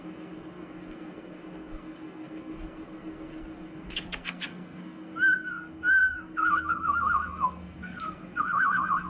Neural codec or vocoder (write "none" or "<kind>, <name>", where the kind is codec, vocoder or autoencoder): codec, SNAC